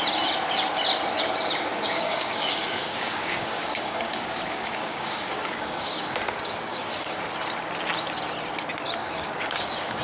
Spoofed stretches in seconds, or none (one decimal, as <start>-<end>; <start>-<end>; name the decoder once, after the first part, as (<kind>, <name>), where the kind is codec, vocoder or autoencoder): 1.7-6.2 (codec, DAC); 6.7-7.2; 9.0-10.0